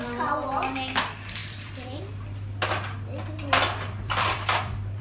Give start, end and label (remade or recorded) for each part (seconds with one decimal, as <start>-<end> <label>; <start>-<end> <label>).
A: 0.0-1.4 recorded; 1.4-2.0 remade; 2.0-3.5 recorded; 3.5-5.0 remade